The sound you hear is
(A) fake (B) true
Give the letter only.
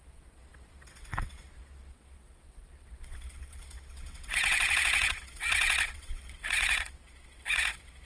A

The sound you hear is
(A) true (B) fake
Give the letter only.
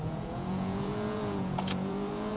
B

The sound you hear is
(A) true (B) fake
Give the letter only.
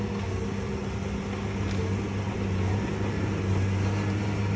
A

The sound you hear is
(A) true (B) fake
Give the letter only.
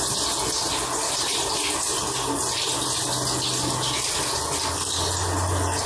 A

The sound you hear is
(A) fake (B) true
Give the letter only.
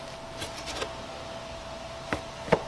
B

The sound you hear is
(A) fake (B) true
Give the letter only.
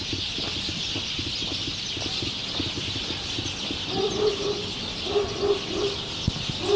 B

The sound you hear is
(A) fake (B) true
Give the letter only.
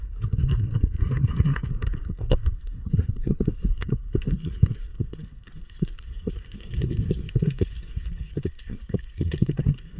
A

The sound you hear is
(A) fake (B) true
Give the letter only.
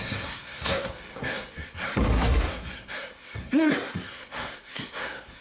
A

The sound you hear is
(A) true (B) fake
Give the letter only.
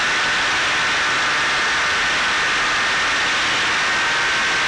A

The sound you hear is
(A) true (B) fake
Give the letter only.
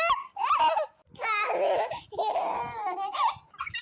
A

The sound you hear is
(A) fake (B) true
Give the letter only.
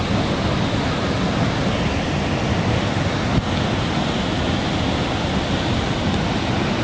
B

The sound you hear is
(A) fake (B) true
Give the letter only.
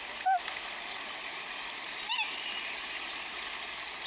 B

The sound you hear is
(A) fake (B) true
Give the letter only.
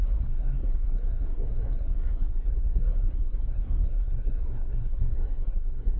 A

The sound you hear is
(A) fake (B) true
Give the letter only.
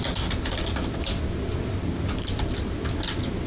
B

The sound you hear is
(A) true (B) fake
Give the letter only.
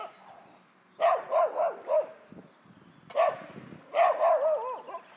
A